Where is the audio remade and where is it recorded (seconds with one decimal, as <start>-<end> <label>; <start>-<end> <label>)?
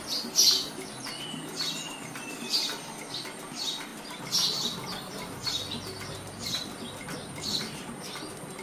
0.0-8.6 recorded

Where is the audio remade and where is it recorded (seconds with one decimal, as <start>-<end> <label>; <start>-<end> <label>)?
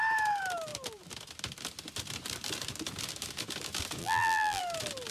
0.0-4.0 recorded; 4.0-4.6 remade; 4.6-5.1 recorded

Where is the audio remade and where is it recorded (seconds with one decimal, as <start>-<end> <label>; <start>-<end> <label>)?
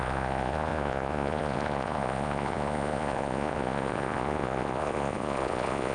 0.0-5.9 remade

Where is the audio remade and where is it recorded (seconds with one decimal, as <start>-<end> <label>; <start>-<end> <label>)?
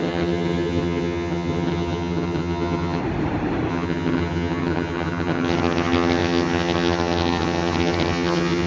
0.0-3.0 remade; 3.0-3.7 recorded; 3.7-8.7 remade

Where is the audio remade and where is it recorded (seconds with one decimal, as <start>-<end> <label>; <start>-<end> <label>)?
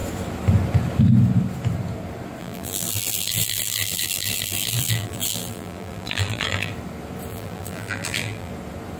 0.0-2.4 recorded; 2.4-6.7 remade; 6.7-7.3 recorded; 7.3-8.5 remade; 8.5-9.0 recorded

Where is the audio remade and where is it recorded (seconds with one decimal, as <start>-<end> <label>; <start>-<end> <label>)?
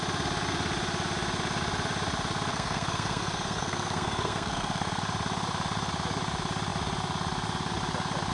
0.0-2.5 recorded; 2.5-5.0 remade; 5.0-8.3 recorded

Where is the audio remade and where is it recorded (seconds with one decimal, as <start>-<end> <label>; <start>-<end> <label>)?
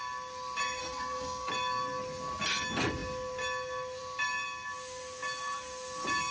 0.0-0.8 recorded; 0.8-1.5 remade; 1.5-6.3 recorded